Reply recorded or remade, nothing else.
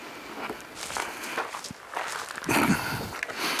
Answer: recorded